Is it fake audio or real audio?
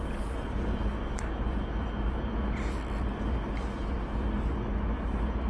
real